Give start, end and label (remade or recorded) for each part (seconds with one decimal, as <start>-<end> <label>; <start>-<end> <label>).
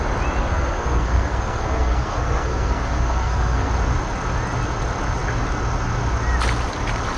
0.0-0.4 recorded; 0.4-3.7 remade; 3.7-7.2 recorded